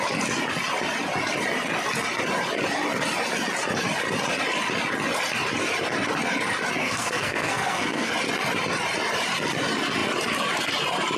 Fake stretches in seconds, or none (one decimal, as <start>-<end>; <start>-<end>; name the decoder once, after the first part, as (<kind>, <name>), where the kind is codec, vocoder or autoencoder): 6.8-8.1 (codec, SNAC)